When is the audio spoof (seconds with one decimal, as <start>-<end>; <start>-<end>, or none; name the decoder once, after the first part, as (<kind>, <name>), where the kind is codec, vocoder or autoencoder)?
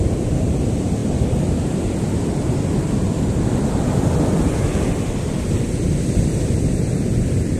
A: none